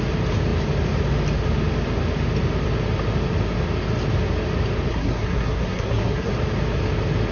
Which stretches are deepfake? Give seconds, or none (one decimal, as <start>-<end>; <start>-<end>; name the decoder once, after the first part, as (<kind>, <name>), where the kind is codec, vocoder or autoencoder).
4.9-6.3 (codec, SNAC)